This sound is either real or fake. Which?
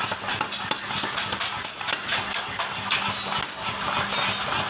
real